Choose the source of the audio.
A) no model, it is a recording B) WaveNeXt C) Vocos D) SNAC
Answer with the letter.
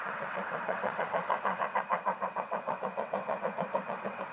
B